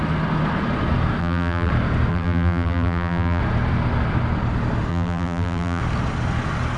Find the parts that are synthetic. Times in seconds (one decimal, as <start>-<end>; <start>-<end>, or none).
1.2-1.7; 2.1-3.4; 4.9-5.8